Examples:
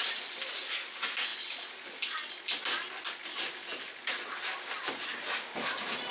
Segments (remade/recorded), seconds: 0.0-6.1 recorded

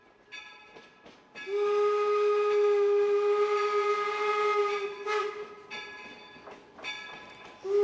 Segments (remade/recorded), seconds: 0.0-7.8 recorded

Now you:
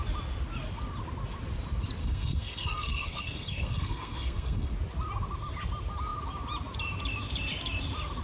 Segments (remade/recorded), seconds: 0.0-2.0 recorded; 2.0-4.7 remade; 4.7-8.2 recorded